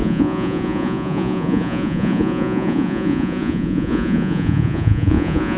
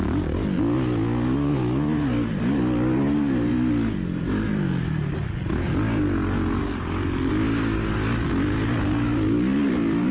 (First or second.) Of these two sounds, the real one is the second